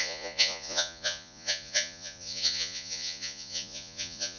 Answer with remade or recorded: remade